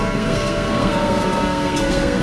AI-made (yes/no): yes